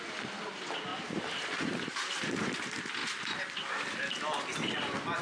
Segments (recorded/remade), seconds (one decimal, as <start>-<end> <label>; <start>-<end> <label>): 0.0-5.2 recorded